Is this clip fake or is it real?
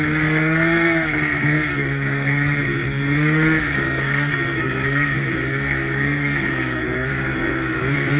fake